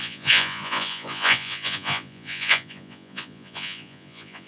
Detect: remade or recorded remade